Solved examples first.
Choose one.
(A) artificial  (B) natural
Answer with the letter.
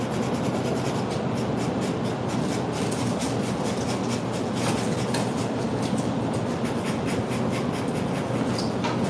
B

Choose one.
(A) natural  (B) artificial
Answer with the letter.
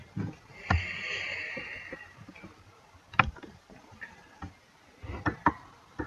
A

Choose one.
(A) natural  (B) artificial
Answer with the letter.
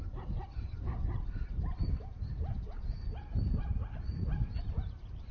A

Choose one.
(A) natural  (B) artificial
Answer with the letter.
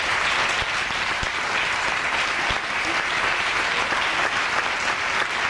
A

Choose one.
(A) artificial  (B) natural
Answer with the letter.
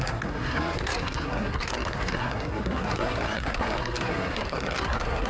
A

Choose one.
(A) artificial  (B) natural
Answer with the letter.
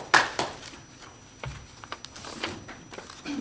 B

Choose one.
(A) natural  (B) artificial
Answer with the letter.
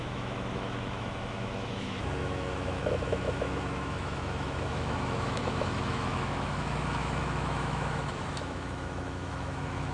B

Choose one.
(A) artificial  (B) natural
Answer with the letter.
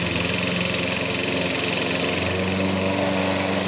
B